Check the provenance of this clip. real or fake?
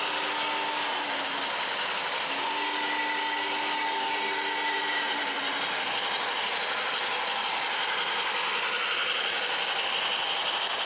real